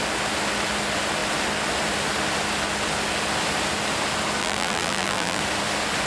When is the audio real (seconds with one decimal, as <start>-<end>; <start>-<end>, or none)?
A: 0.0-4.4; 5.4-6.1